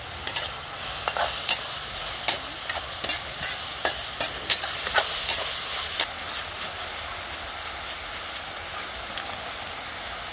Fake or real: real